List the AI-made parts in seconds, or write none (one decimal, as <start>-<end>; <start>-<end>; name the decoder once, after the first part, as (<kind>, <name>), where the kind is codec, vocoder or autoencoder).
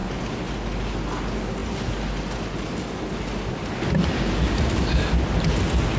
none